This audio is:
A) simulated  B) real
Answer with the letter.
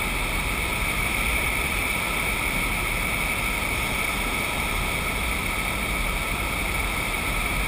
B